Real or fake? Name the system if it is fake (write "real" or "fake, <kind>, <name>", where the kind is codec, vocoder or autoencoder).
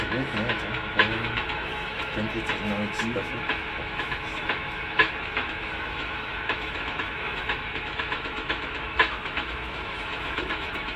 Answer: fake, autoencoder, DAC-VAE